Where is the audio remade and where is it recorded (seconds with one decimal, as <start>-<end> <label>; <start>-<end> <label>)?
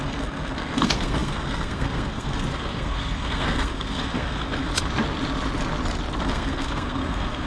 0.0-4.7 remade; 4.7-6.2 recorded; 6.2-7.5 remade